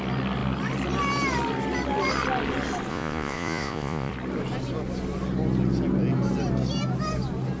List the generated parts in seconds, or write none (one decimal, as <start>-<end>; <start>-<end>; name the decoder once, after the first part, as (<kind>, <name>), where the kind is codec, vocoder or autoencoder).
2.9-4.1 (vocoder, Vocos)